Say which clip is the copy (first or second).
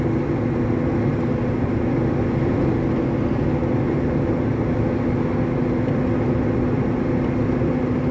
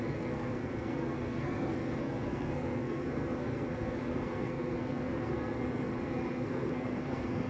second